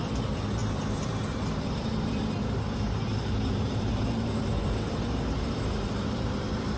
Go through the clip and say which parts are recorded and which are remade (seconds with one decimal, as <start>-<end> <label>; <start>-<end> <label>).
0.0-6.8 remade